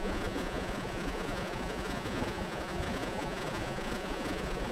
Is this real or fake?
fake